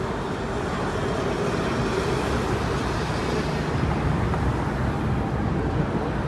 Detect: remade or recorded recorded